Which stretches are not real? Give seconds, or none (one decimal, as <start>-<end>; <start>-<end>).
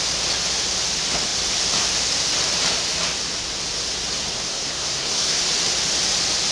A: 4.5-5.4